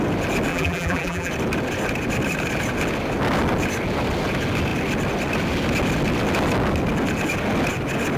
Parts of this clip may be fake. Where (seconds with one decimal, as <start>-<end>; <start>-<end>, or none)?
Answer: 0.5-1.3